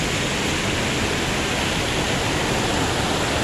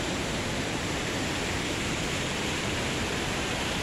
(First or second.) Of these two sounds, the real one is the first